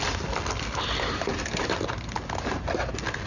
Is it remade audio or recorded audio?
recorded